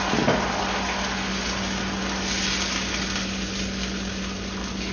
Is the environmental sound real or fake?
real